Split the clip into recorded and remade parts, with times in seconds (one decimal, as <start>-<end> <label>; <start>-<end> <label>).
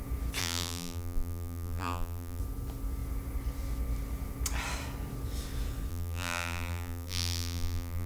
0.0-0.4 recorded; 0.4-2.4 remade; 2.4-5.9 recorded; 5.9-8.1 remade